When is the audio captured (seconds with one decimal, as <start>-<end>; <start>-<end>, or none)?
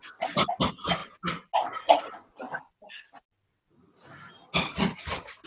0.0-5.5